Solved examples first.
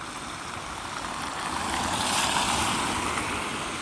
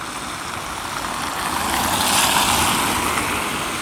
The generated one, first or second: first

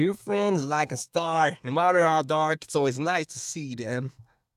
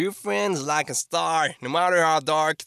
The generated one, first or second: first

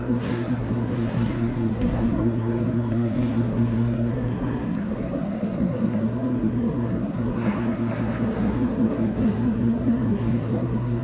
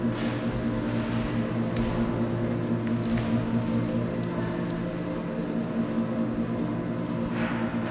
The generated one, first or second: first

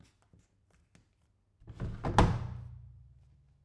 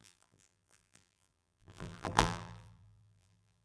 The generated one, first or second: second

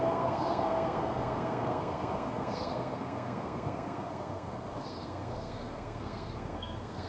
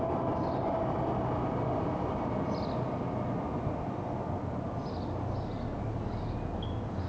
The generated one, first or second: first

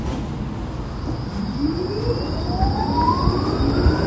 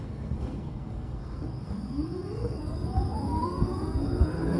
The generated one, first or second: second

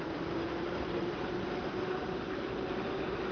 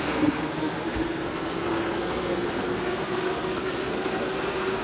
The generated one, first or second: second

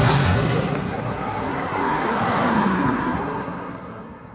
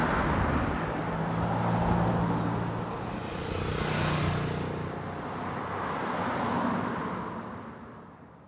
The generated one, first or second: first